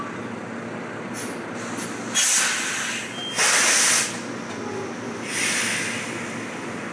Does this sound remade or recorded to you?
recorded